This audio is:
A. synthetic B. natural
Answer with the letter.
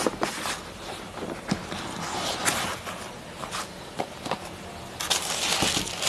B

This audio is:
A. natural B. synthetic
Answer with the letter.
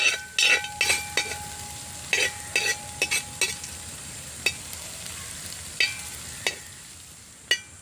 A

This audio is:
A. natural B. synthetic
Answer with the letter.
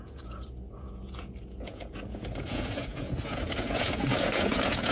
B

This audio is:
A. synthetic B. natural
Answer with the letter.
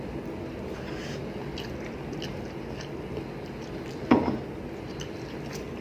B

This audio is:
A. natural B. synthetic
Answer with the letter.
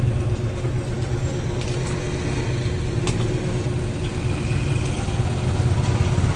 A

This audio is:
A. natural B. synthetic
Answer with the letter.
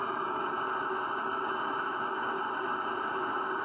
A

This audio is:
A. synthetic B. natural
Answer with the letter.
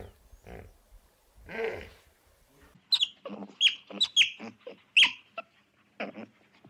B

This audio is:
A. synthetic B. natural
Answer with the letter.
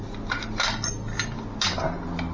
B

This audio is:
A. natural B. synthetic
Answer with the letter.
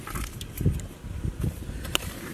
A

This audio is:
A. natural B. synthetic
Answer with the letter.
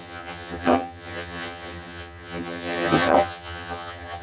B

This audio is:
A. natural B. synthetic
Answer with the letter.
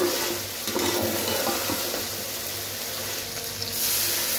A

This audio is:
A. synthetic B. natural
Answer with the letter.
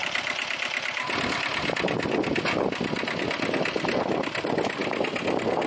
B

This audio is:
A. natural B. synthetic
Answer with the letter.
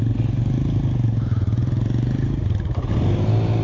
A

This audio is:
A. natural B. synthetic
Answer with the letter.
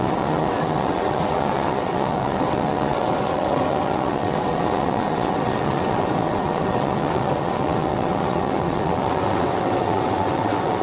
B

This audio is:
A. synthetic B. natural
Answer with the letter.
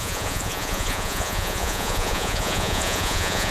A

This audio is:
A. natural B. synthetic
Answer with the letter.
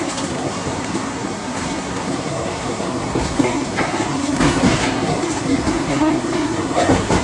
B